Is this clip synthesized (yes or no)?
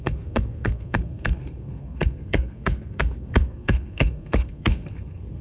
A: yes